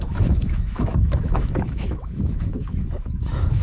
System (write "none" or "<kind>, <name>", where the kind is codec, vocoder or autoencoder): autoencoder, DAC-VAE